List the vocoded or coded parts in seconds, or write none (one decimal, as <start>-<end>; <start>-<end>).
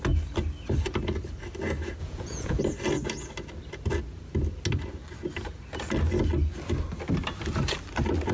2.0-2.6